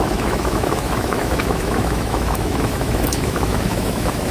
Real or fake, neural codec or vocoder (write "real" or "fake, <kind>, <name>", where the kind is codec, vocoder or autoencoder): fake, autoencoder, DAC-VAE